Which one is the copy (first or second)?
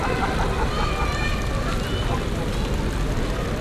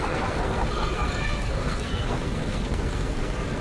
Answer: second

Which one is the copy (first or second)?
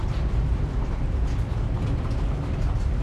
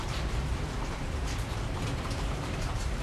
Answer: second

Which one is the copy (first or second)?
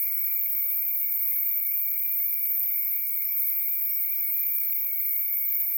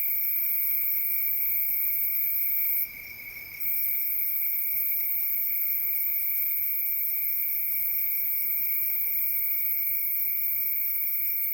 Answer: first